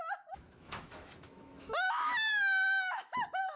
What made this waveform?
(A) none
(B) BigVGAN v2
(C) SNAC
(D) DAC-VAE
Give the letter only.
D